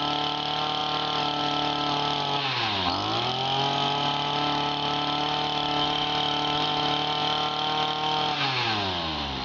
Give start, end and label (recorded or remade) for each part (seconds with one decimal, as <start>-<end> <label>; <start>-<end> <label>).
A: 0.0-9.4 recorded